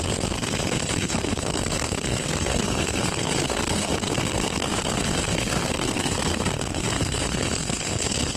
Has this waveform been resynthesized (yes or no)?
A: yes